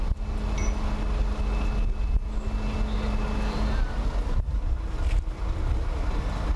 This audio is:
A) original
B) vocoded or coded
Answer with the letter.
A